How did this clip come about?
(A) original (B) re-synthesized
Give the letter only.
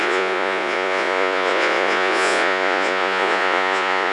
B